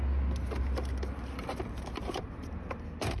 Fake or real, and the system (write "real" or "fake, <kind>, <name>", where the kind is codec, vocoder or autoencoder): real